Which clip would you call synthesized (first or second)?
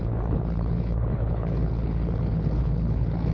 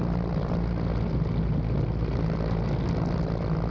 first